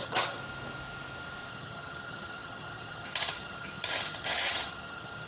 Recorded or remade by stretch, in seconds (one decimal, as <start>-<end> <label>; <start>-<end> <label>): 0.0-0.4 remade; 0.4-1.5 recorded; 1.5-5.3 remade